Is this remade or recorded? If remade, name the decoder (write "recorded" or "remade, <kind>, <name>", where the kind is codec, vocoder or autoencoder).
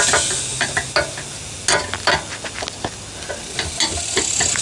recorded